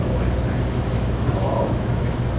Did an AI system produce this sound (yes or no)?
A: yes